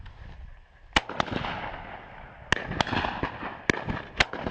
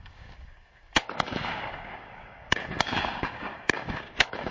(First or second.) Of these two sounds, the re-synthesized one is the second